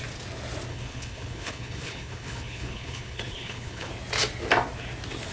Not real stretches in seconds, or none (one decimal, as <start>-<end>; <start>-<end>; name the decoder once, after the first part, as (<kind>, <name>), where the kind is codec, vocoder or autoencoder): 0.7-3.9 (codec, HILCodec)